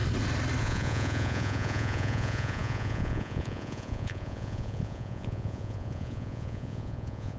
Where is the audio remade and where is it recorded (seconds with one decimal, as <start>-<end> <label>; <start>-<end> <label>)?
0.0-0.6 recorded; 0.6-7.4 remade